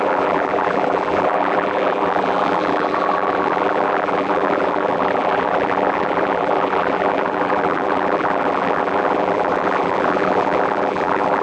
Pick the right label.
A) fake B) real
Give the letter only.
A